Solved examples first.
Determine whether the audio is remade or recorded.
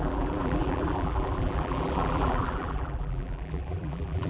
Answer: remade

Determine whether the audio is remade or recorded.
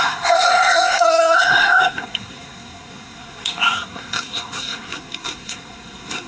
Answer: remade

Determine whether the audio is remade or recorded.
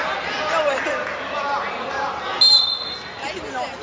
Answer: recorded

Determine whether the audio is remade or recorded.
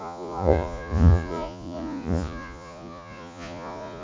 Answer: remade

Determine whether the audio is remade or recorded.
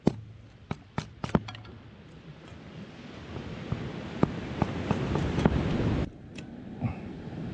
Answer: recorded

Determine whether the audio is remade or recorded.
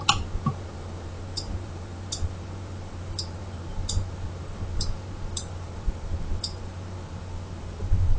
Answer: remade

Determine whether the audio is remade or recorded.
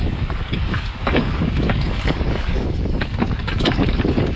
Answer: remade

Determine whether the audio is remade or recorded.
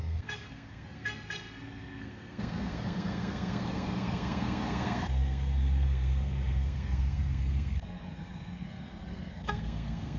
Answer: remade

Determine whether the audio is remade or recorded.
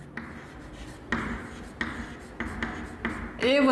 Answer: recorded